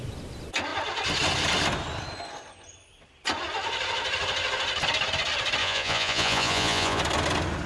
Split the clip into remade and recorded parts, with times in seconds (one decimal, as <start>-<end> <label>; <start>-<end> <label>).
0.0-5.6 recorded; 5.6-7.0 remade; 7.0-7.7 recorded